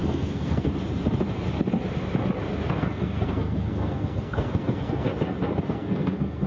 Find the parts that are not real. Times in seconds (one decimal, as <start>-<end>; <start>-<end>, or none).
0.0-0.7; 2.8-5.1; 5.6-6.5